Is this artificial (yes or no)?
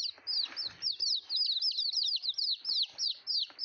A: no